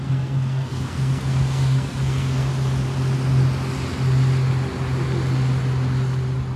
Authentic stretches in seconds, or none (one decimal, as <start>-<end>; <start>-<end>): 2.5-6.6